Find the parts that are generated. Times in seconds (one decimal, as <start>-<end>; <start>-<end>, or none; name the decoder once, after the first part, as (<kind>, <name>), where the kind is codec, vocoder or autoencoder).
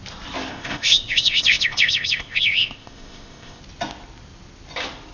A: 0.5-3.6 (codec, ZipCodec)